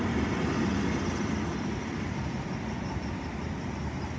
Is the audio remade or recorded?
recorded